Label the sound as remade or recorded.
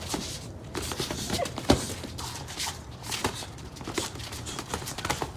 remade